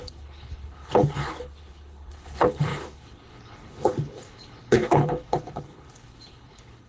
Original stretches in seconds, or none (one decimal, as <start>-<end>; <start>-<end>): none

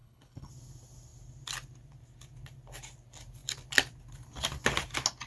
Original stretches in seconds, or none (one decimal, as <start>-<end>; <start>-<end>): 0.5-5.3

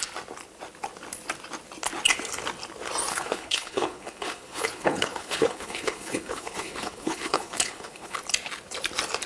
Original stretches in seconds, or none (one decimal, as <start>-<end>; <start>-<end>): 0.0-3.1; 8.2-9.3

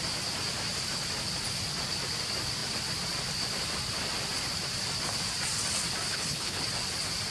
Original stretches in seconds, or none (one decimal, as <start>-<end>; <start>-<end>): 0.0-6.1; 6.6-7.3

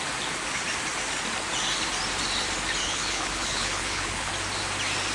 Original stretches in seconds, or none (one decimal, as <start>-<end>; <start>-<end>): 0.0-2.8; 4.3-5.1

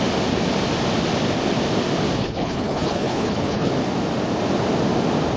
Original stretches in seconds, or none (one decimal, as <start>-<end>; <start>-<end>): 0.0-2.2; 3.7-5.4